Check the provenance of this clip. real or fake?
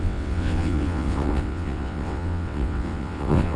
fake